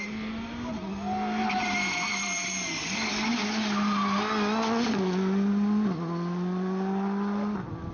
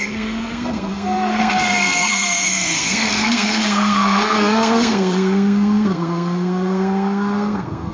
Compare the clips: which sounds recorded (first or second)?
first